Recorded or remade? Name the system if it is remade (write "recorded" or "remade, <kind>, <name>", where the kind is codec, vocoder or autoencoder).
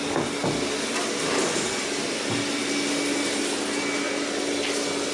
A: recorded